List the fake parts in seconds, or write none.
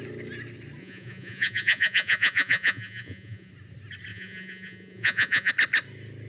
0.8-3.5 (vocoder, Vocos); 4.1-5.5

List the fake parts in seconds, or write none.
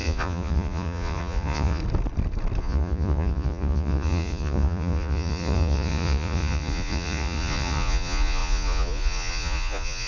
0.0-1.8 (vocoder, Vocos); 2.6-10.1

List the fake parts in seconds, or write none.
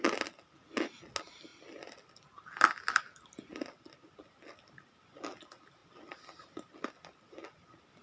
none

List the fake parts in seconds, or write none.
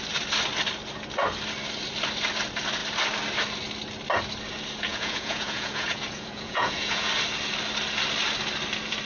4.9-7.1 (vocoder, Vocos)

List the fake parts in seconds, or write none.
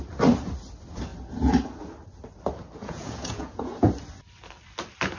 2.8-3.9 (vocoder, Vocos)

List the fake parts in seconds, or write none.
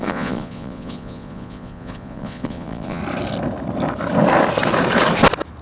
0.0-3.0 (vocoder, Vocos)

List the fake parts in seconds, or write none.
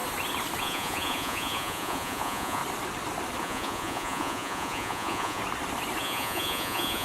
0.6-2.6 (vocoder, Vocos); 3.4-5.4; 6.0-7.0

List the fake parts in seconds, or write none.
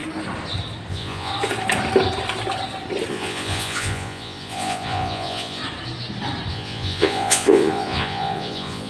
0.9-1.3 (vocoder, Vocos); 3.1-5.6; 6.5-8.9